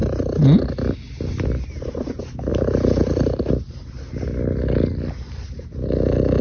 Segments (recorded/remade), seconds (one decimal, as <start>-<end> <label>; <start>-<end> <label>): 0.0-6.4 recorded